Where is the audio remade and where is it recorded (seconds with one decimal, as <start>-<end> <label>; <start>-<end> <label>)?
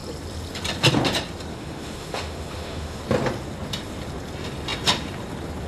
0.0-1.5 recorded; 1.5-3.0 remade; 3.0-5.7 recorded